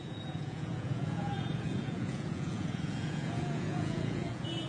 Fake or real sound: fake